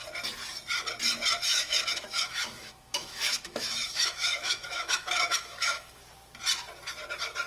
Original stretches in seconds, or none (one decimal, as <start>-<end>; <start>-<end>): 0.0-1.5; 6.0-7.5